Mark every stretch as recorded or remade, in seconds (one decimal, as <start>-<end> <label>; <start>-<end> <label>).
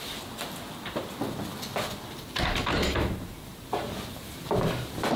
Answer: 0.0-5.2 recorded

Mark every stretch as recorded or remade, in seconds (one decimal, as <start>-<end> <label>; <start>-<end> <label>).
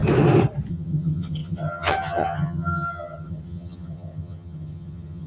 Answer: 0.0-0.7 recorded; 0.7-5.3 remade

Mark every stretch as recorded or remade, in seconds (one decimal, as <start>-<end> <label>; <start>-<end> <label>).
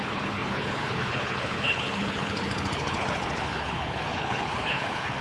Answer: 0.0-5.2 remade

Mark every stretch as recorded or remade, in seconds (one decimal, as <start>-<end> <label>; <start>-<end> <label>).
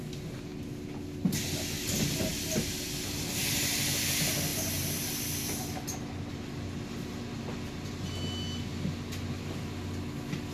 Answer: 0.0-10.5 recorded